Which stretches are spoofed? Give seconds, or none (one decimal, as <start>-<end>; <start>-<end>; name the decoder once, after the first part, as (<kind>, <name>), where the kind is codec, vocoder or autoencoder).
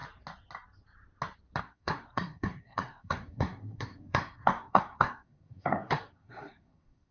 1.6-7.1 (codec, SNAC)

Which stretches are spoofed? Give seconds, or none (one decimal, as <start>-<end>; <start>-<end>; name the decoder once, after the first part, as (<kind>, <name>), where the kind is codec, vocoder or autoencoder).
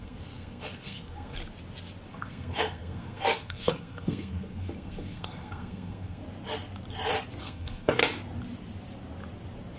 0.0-1.4 (codec, SNAC); 2.1-6.2; 7.4-8.0